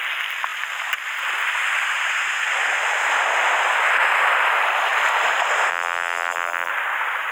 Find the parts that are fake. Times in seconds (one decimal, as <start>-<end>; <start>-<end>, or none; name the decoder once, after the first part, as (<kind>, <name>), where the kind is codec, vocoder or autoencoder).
5.7-6.7 (vocoder, BigVGAN v2)